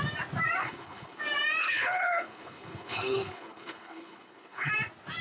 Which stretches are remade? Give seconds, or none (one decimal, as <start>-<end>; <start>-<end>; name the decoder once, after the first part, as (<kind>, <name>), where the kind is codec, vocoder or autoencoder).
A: 0.6-1.2 (codec, HILCodec); 1.6-4.7